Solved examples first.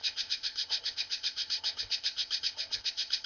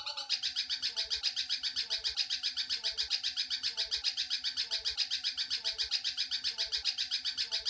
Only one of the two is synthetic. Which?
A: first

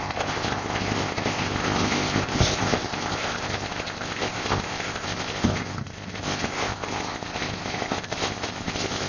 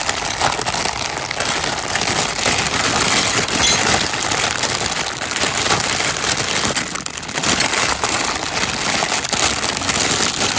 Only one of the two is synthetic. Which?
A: first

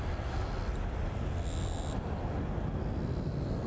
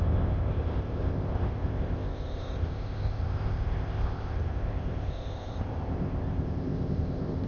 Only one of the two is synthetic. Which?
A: second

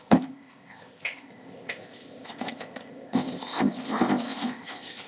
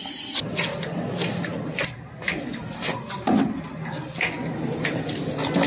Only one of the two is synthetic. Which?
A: first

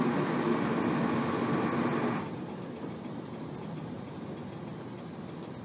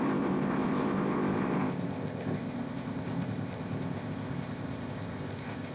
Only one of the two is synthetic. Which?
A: second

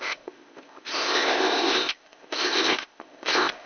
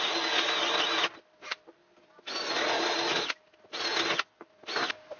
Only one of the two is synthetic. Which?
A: first